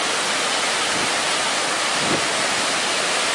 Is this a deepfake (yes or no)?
no